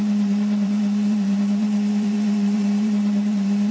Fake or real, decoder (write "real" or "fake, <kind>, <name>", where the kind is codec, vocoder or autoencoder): fake, vocoder, BigVGAN v2